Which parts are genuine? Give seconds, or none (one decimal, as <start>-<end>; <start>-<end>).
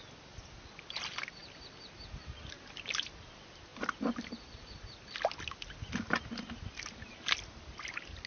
0.0-8.3